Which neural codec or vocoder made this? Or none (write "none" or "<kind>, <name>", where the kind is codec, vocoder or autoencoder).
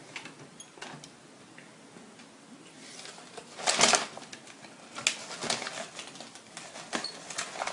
none